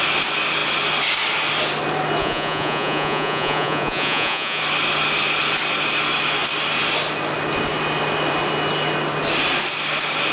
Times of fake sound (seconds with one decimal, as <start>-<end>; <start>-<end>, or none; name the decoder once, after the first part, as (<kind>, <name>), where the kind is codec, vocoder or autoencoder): 2.2-4.6 (vocoder, Vocos)